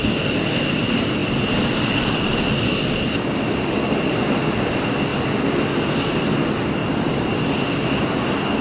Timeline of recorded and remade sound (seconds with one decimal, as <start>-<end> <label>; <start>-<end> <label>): 0.0-8.6 recorded